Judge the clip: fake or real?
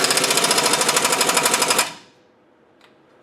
real